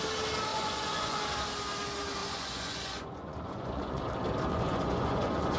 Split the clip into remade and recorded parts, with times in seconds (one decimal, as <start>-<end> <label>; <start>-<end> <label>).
0.0-0.5 recorded; 0.5-1.2 remade; 1.2-2.2 recorded; 2.2-4.0 remade; 4.0-4.5 recorded; 4.5-5.6 remade